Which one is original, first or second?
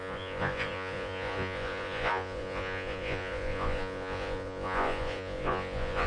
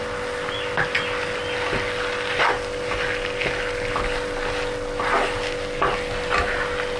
second